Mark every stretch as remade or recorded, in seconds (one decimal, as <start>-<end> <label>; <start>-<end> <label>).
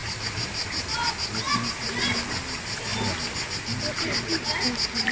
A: 0.0-5.1 recorded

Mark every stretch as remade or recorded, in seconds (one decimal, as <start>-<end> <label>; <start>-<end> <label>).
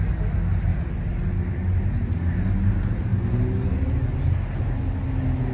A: 0.0-5.5 recorded